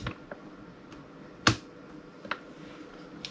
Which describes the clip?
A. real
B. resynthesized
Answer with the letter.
A